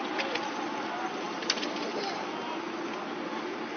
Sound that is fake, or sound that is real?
real